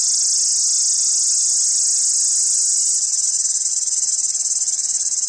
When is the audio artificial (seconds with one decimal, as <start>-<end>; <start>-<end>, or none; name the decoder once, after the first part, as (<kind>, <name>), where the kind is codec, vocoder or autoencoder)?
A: none